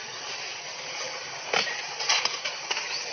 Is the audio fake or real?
real